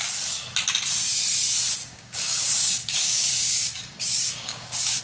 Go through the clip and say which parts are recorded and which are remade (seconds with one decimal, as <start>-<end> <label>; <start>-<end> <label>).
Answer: 0.0-1.8 recorded; 1.8-5.0 remade